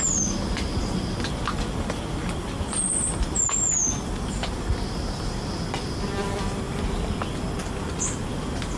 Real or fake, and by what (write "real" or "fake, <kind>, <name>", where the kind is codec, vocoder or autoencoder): real